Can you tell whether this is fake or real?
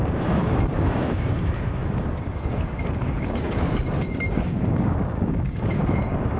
fake